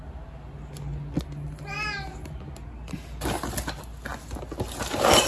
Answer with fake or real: real